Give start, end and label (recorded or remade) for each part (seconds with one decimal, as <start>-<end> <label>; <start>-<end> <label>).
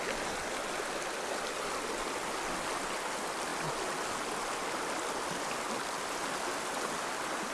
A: 0.0-7.5 recorded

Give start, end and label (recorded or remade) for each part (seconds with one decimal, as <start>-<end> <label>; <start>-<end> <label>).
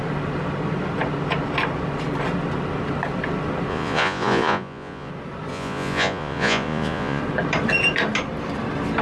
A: 0.0-3.7 recorded; 3.7-5.1 remade; 5.1-5.5 recorded; 5.5-7.2 remade; 7.2-9.0 recorded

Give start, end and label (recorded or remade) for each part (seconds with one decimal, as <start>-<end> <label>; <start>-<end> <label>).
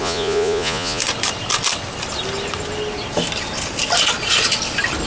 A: 0.0-1.0 remade; 1.0-5.1 recorded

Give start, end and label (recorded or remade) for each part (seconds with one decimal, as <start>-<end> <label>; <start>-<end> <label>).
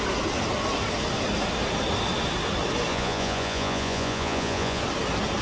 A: 0.0-2.9 recorded; 2.9-4.8 remade; 4.8-5.4 recorded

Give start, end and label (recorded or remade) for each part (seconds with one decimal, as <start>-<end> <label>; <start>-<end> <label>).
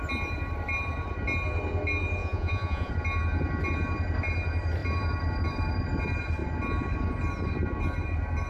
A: 0.0-2.2 recorded; 2.2-2.9 remade; 2.9-8.5 recorded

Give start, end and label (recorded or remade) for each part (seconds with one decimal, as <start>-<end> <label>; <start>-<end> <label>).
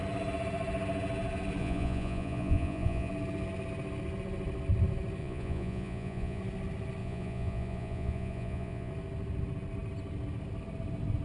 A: 0.0-1.6 recorded; 1.6-3.1 remade; 3.1-5.2 recorded; 5.2-6.4 remade; 6.4-7.0 recorded; 7.0-8.9 remade; 8.9-11.2 recorded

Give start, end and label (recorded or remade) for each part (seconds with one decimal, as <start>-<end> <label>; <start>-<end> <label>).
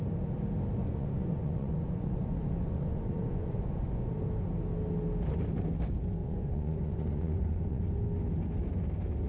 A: 0.0-0.8 recorded; 0.8-4.1 remade; 4.1-6.2 recorded; 6.2-7.8 remade; 7.8-9.3 recorded